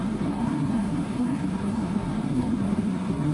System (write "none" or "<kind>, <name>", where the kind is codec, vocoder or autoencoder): codec, SNAC